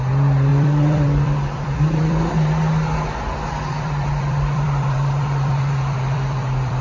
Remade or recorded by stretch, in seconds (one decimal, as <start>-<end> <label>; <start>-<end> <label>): 0.0-0.5 recorded; 0.5-2.3 remade; 2.3-3.7 recorded; 3.7-6.8 remade